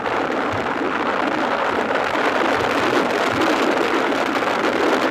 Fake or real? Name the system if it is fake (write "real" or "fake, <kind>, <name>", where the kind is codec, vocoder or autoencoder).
real